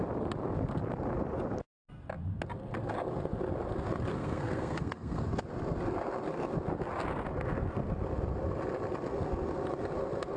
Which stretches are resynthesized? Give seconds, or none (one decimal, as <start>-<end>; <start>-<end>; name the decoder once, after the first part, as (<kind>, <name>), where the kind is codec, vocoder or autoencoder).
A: 4.1-5.3 (codec, SNAC)